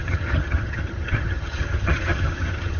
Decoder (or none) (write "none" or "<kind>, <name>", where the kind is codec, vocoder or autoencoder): vocoder, HiFi-GAN